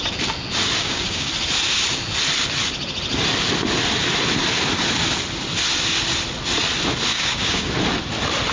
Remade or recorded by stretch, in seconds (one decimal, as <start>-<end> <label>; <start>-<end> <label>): 0.0-0.8 recorded; 0.8-1.3 remade; 1.3-7.1 recorded; 7.1-7.7 remade; 7.7-8.5 recorded